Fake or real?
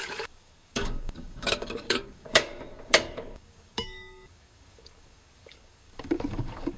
fake